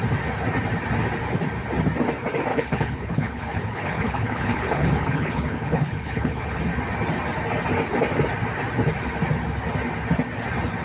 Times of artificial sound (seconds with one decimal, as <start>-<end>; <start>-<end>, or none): 2.5-6.6